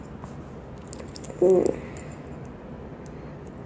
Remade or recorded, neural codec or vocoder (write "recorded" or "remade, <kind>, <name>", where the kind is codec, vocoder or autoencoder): recorded